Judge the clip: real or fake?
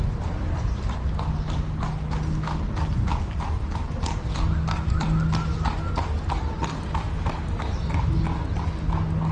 real